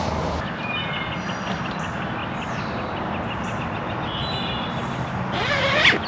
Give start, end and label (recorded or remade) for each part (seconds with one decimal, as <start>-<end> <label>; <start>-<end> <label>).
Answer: 0.0-6.1 recorded